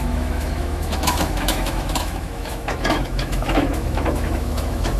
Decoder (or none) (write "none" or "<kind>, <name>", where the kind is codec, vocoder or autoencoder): autoencoder, DAC-VAE